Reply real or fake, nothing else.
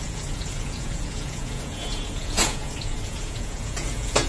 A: fake